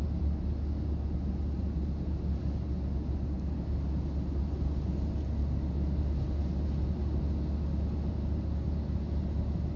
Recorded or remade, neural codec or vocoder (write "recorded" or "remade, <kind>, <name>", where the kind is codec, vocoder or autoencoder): recorded